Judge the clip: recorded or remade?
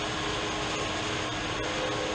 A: recorded